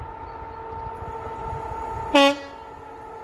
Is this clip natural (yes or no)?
yes